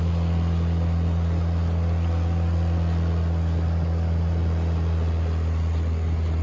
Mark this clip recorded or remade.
recorded